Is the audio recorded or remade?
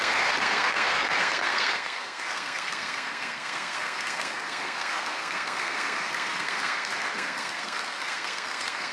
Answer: remade